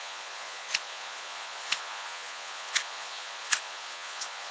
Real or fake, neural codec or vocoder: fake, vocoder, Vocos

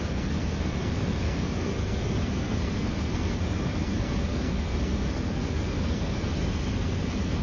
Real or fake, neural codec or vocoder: fake, codec, SNAC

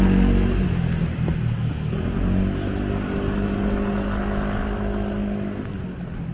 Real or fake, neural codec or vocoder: real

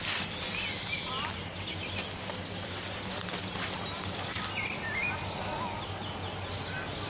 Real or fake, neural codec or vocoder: real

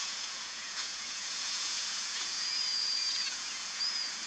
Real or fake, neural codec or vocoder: fake, vocoder, Vocos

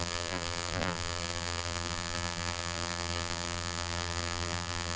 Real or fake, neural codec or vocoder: fake, vocoder, BigVGAN v2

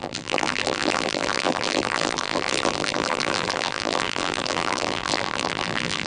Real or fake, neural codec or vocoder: fake, vocoder, BigVGAN v2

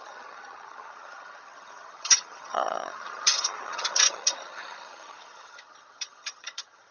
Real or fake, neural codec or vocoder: fake, vocoder, HiFi-GAN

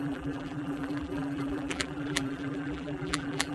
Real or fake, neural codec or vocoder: fake, vocoder, BigVGAN v2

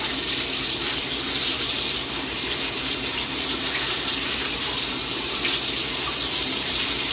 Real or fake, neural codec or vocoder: fake, vocoder, BigVGAN v2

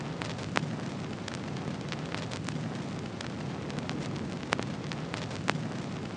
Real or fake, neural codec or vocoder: real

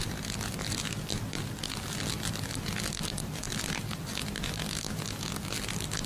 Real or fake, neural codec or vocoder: real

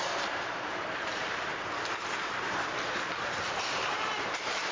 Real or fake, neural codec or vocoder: fake, vocoder, BigVGAN v2